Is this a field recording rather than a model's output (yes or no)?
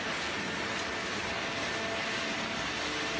yes